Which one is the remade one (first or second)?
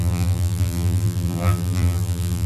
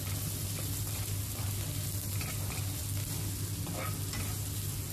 first